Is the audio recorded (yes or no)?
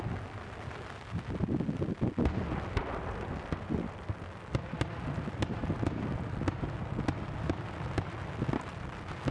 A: yes